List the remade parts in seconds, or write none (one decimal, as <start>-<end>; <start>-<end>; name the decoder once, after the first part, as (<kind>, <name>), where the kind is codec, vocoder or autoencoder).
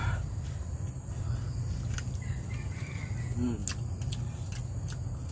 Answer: 0.0-3.2 (vocoder, BigVGAN v2)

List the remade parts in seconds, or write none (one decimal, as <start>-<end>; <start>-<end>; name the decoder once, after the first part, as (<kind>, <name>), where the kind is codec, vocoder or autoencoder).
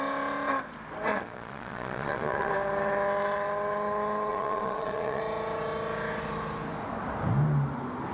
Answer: 1.1-2.5 (vocoder, Vocos); 4.3-5.2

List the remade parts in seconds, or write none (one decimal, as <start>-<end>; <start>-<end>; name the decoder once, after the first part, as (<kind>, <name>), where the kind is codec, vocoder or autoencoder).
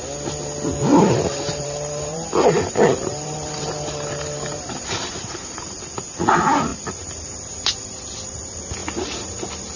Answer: 0.9-5.8 (vocoder, BigVGAN v2)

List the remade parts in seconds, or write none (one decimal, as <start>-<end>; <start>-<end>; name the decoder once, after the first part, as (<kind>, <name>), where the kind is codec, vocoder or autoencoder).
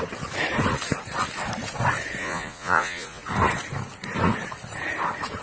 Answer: 2.2-3.2 (vocoder, Vocos)